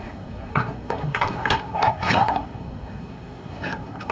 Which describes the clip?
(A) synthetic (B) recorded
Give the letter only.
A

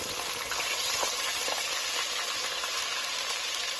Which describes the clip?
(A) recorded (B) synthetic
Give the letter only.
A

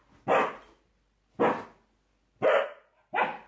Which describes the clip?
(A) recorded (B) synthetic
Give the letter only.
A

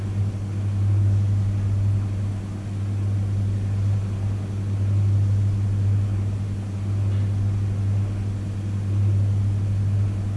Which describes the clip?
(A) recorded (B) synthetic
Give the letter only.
A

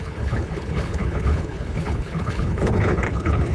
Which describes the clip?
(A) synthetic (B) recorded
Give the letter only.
A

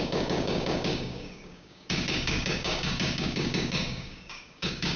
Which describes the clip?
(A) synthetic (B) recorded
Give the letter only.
A